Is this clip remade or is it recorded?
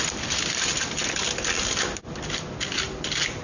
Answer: recorded